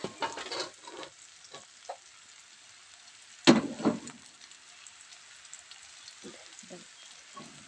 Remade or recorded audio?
recorded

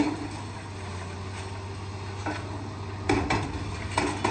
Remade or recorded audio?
recorded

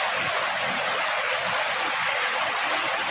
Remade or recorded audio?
recorded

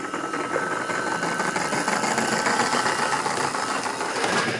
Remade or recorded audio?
recorded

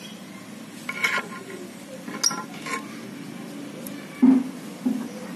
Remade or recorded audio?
recorded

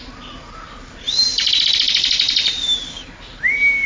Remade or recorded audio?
recorded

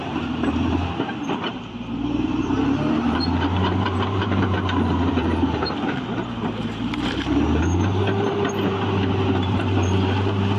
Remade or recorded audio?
remade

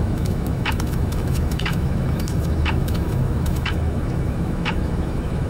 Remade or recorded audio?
remade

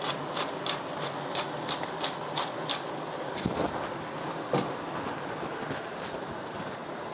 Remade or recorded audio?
recorded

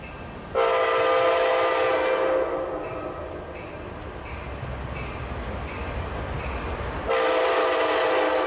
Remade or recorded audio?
recorded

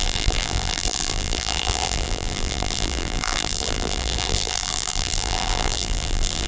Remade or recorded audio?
remade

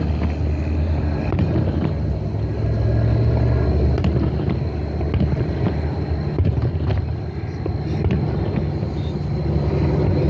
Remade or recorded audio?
recorded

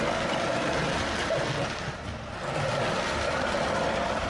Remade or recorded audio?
recorded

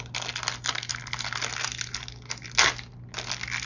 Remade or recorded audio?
recorded